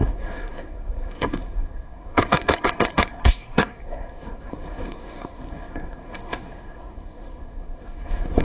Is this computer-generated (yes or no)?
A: yes